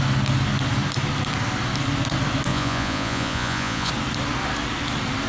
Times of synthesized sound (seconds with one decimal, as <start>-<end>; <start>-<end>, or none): 2.5-3.9